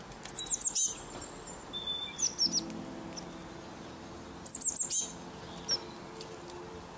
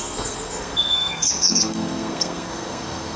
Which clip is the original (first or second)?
first